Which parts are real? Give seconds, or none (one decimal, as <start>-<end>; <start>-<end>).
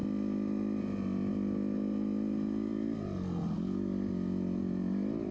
0.0-5.3